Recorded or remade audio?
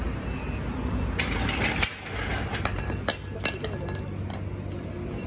recorded